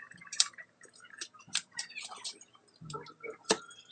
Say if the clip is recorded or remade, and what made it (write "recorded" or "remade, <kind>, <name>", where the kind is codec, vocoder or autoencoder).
remade, vocoder, BigVGAN v2